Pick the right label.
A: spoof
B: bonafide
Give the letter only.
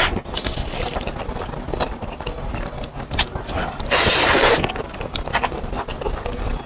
B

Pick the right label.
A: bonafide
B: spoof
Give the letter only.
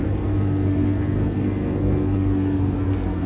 B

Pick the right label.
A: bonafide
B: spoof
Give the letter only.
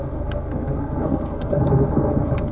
B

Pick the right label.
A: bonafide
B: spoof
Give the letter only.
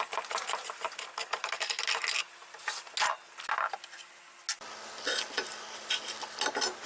A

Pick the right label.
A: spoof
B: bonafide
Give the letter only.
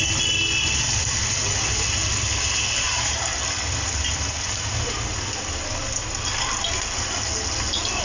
B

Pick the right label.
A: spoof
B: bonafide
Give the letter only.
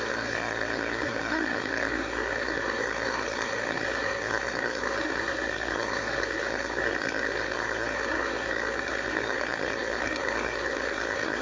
A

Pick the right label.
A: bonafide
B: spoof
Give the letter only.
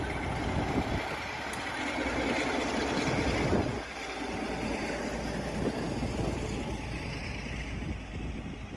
A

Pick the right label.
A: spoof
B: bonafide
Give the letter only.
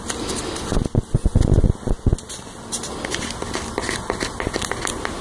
B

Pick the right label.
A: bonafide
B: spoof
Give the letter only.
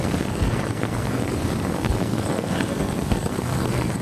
B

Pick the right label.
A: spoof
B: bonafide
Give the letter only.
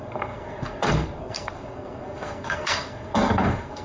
A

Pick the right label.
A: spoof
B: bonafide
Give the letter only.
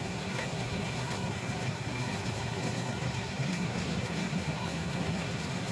A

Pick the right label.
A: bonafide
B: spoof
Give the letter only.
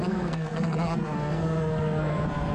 B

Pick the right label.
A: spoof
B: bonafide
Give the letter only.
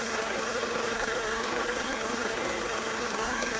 A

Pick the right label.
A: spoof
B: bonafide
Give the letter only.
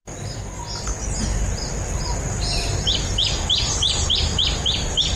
B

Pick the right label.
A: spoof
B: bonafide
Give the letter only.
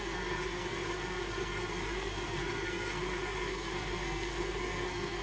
A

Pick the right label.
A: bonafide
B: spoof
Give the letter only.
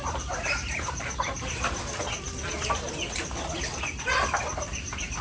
A